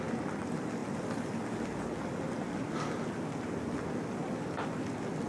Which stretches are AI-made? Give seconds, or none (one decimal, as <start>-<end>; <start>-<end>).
none